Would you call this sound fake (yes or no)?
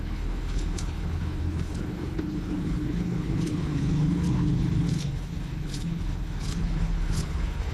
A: yes